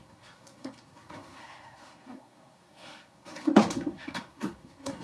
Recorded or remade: remade